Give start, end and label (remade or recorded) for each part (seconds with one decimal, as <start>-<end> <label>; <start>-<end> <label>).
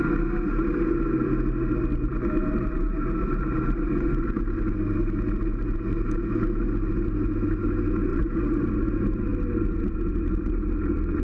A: 0.0-1.9 recorded; 1.9-4.4 remade; 4.4-8.1 recorded; 8.1-8.7 remade; 8.7-11.2 recorded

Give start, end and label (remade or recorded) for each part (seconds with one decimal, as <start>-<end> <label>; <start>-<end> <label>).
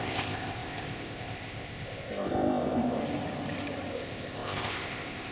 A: 0.0-3.0 remade; 3.0-3.9 recorded; 3.9-5.3 remade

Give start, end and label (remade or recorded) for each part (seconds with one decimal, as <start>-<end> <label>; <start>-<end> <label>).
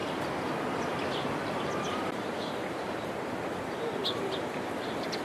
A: 0.0-4.0 remade; 4.0-4.7 recorded; 4.7-5.2 remade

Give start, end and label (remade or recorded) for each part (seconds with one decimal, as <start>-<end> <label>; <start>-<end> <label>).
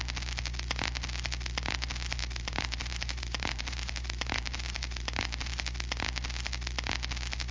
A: 0.0-2.2 recorded; 2.2-5.5 remade; 5.5-7.5 recorded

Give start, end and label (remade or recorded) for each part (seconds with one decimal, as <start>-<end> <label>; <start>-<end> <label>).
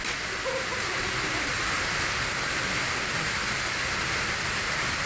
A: 0.0-5.1 recorded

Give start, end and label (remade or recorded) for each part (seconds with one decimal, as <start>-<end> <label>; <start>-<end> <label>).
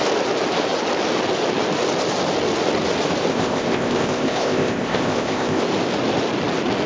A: 0.0-3.3 recorded; 3.3-5.6 remade; 5.6-6.9 recorded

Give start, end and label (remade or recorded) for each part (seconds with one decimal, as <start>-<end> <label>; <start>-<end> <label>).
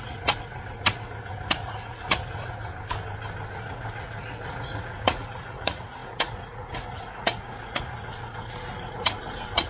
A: 0.0-2.7 remade; 2.7-3.5 recorded; 3.5-9.7 remade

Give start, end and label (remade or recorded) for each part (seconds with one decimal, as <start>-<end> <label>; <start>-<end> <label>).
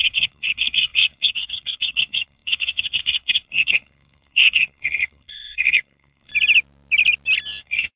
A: 0.0-6.3 remade; 6.3-7.6 recorded; 7.6-8.0 remade